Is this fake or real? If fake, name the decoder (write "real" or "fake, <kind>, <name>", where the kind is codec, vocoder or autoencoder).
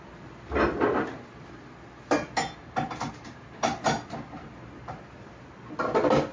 real